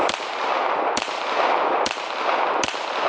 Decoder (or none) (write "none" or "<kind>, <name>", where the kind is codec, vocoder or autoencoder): none